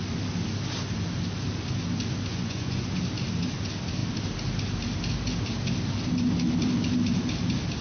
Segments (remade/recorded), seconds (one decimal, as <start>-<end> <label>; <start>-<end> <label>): 0.0-2.3 recorded; 2.3-3.0 remade; 3.0-7.8 recorded